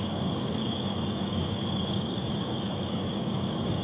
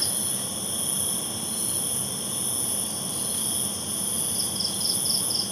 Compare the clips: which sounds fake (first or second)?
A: first